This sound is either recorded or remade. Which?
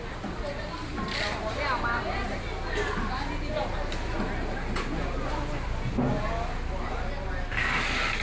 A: recorded